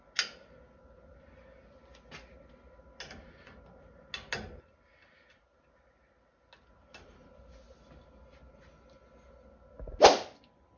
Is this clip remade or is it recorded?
recorded